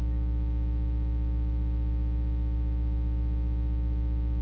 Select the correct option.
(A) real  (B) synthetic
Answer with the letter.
A